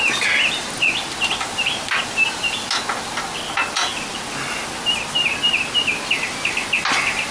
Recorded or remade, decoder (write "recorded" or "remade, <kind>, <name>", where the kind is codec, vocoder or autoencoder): recorded